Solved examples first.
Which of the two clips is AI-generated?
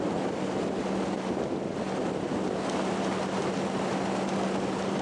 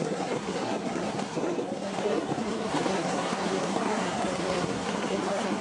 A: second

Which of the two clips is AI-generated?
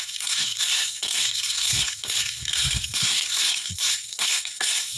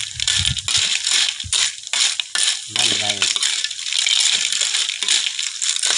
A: first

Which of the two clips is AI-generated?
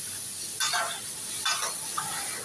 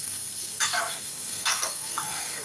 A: second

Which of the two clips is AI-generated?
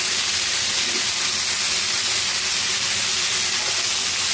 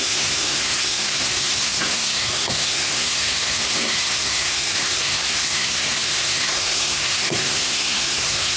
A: second